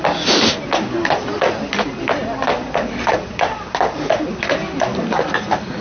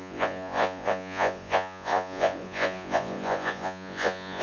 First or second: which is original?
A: first